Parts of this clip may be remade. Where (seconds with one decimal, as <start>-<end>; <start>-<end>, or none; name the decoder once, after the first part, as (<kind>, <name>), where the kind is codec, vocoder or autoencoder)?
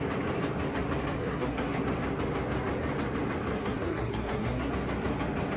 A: 1.2-1.8 (codec, SNAC); 3.5-4.7